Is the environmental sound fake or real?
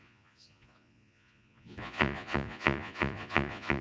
fake